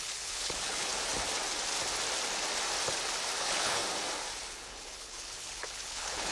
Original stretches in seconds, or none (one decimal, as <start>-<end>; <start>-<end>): 0.9-3.4; 3.8-4.5